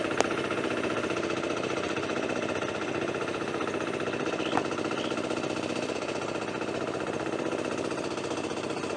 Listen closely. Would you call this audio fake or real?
fake